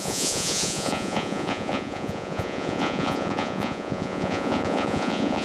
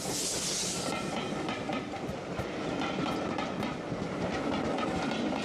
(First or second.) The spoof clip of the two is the first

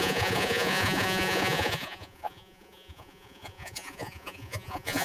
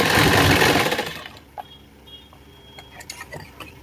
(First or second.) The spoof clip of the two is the first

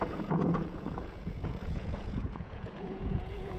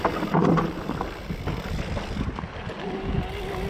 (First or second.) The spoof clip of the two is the first